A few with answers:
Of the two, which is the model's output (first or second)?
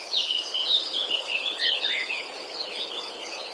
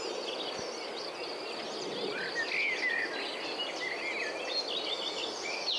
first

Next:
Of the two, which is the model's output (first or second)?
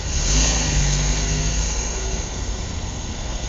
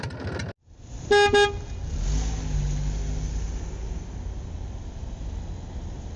first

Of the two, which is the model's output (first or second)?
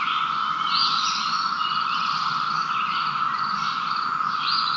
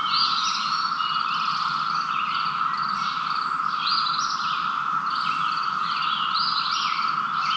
first